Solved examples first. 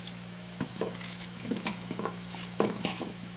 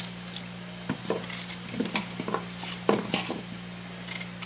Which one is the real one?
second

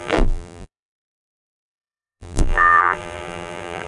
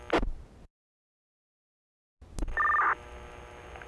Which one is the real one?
second